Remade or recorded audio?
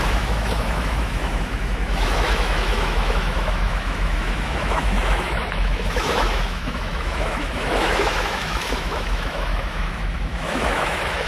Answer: remade